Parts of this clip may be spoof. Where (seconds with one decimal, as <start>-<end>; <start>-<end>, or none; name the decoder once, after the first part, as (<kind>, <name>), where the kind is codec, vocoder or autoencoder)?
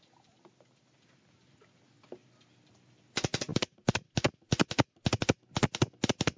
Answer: none